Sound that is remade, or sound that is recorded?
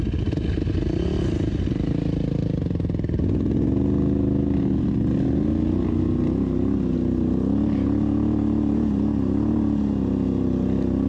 recorded